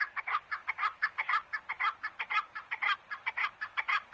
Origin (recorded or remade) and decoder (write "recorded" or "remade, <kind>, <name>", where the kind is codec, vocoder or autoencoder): recorded